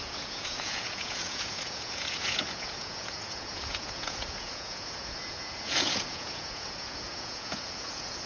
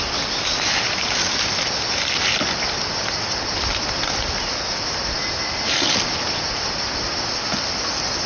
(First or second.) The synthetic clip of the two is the first